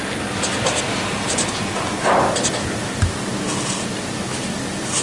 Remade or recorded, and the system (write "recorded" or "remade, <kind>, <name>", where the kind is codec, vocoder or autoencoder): recorded